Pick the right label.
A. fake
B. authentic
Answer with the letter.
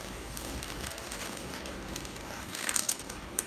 A